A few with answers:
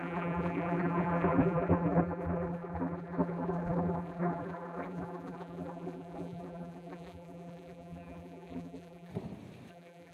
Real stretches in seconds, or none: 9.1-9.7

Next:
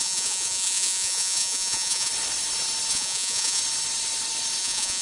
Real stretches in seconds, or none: 2.1-2.9; 3.6-4.6

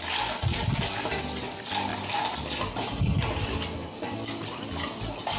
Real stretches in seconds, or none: 0.0-5.4

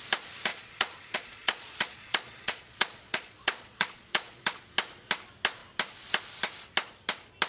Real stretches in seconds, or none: 0.0-0.5; 4.6-7.5

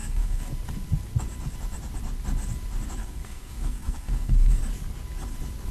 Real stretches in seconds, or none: 0.5-3.0; 4.6-5.7